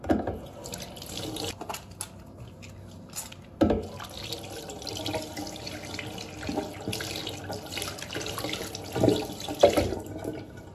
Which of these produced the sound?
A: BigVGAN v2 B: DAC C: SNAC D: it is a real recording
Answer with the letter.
D